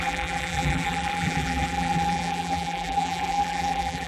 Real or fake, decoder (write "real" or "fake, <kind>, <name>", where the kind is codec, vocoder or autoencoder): fake, vocoder, BigVGAN v2